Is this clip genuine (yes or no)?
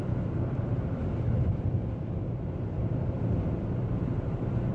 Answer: no